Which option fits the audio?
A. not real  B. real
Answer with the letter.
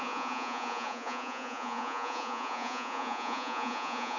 A